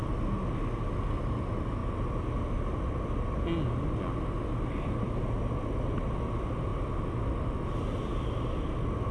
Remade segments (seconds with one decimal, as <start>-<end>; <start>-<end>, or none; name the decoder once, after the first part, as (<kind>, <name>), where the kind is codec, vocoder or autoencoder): none